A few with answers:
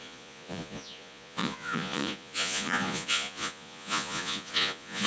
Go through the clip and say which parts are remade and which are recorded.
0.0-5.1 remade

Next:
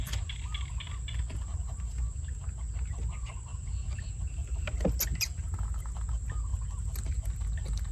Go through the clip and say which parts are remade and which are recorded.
0.0-7.9 recorded

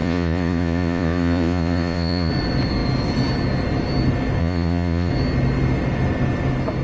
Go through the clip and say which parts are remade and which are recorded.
0.0-2.3 remade; 2.3-4.4 recorded; 4.4-5.1 remade; 5.1-6.8 recorded

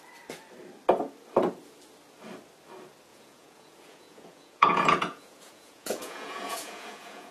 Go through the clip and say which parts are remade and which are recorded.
0.0-3.1 recorded; 3.1-7.3 remade

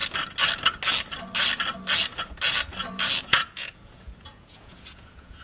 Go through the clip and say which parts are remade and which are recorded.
0.0-3.2 recorded; 3.2-5.4 remade

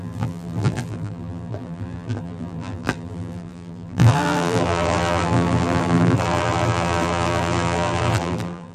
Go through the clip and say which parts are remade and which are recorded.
0.0-8.7 remade